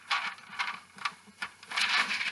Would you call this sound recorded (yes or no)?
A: no